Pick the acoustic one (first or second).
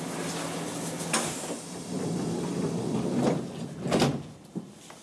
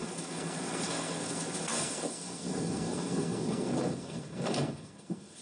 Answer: first